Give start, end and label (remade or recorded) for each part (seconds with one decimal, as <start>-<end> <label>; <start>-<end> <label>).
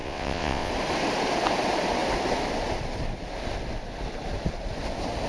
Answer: 0.0-0.7 remade; 0.7-5.3 recorded